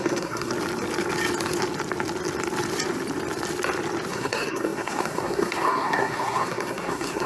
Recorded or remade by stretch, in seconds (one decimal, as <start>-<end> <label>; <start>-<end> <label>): 0.0-0.5 remade; 0.5-4.1 recorded; 4.1-7.3 remade